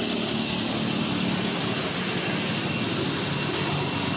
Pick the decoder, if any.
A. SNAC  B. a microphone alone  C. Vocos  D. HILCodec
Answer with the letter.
B